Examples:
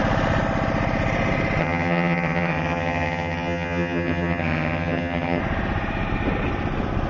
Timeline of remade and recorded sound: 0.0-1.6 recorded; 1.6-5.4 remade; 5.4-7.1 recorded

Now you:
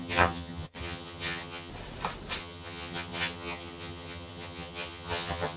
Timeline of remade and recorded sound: 0.0-1.7 remade; 1.7-2.4 recorded; 2.4-5.6 remade

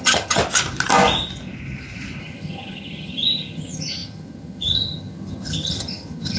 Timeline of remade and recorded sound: 0.0-0.4 remade; 0.4-2.2 recorded; 2.2-6.4 remade

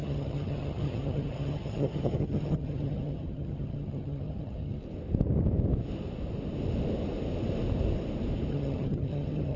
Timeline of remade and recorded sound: 0.0-4.8 remade; 4.8-8.5 recorded; 8.5-9.6 remade

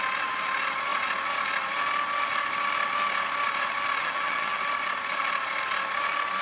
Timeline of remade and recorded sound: 0.0-4.0 recorded; 4.0-4.6 remade; 4.6-6.4 recorded

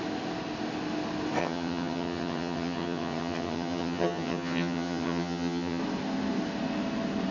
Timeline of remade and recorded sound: 0.0-1.4 recorded; 1.4-5.8 remade; 5.8-7.3 recorded